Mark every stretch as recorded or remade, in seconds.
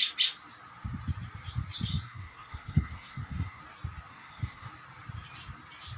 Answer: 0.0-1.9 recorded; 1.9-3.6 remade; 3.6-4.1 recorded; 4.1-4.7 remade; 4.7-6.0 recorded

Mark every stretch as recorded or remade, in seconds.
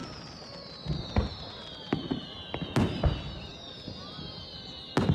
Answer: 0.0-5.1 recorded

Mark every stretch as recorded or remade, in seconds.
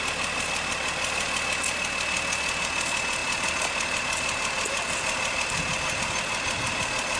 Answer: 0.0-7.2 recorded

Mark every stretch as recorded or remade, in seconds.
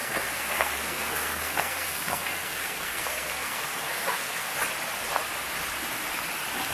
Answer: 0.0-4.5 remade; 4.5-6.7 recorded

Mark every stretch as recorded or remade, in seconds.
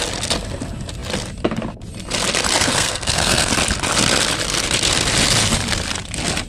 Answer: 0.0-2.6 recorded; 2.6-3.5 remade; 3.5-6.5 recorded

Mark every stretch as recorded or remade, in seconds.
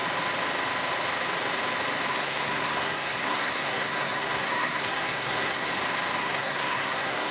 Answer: 0.0-2.1 recorded; 2.1-5.7 remade; 5.7-6.2 recorded; 6.2-7.3 remade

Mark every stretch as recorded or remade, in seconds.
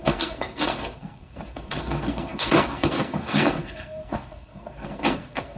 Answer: 0.0-5.6 remade